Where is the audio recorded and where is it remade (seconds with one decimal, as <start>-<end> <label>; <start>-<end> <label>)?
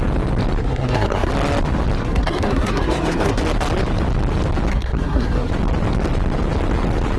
0.0-0.6 recorded; 0.6-1.3 remade; 1.3-2.0 recorded; 2.0-3.4 remade; 3.4-4.7 recorded; 4.7-5.5 remade; 5.5-7.2 recorded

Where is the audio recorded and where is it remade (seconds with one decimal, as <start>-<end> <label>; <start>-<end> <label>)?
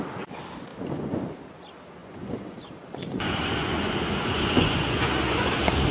0.0-0.7 recorded; 0.7-1.2 remade; 1.2-2.0 recorded; 2.0-5.5 remade; 5.5-5.9 recorded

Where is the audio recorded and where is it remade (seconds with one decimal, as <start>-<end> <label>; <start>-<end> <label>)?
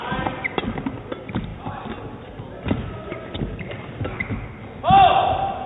0.0-5.7 recorded